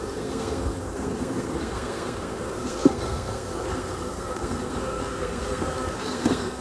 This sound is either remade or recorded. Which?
remade